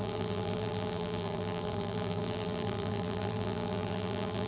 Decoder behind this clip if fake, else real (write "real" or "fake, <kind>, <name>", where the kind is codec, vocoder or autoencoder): fake, vocoder, BigVGAN v2